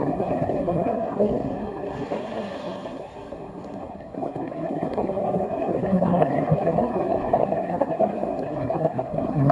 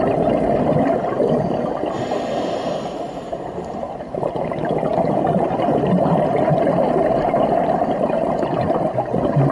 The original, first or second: second